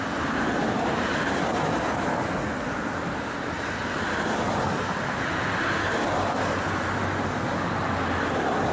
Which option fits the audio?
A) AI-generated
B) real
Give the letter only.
B